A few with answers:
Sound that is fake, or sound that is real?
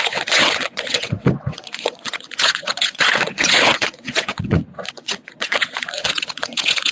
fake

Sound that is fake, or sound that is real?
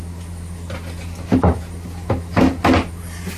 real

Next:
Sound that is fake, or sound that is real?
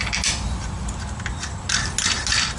real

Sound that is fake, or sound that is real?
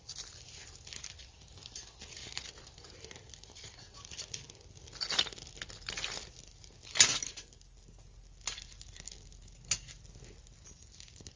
real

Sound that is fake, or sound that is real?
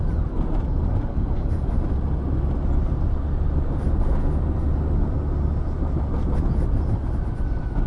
real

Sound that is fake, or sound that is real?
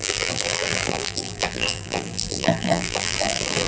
fake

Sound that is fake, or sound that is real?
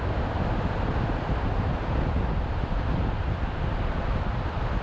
real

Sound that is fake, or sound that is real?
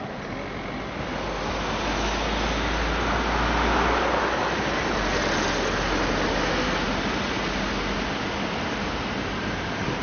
real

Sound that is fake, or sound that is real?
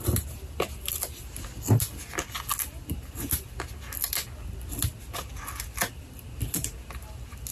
real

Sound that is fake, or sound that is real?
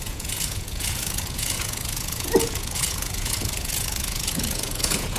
fake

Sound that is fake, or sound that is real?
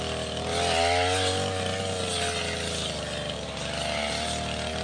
real